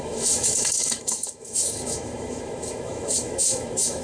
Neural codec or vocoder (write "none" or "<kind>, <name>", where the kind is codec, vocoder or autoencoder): autoencoder, DAC-VAE